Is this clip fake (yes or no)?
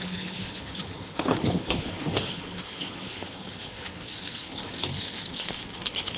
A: yes